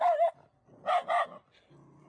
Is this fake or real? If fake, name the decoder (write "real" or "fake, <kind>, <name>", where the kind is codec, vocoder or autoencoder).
real